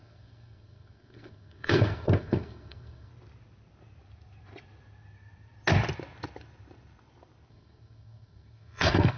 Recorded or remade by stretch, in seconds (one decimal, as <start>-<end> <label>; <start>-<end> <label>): 0.0-3.1 remade; 3.1-7.5 recorded; 7.5-9.2 remade